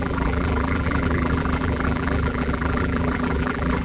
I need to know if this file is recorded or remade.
remade